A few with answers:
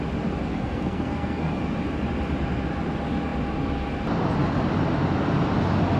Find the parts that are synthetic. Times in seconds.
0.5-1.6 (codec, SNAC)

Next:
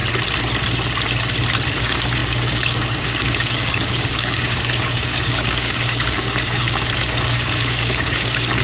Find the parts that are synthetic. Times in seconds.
1.8-8.6 (codec, DAC)

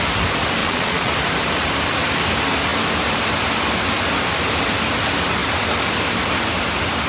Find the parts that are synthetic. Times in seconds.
0.6-1.1 (vocoder, Vocos)

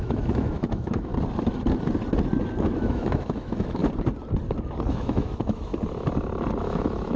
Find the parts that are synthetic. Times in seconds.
0.0-1.1 (autoencoder, DAC-VAE); 2.6-3.8; 4.9-5.7; 6.6-7.2

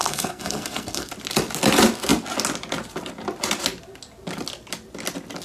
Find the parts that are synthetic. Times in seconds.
0.0-1.1 (codec, SNAC)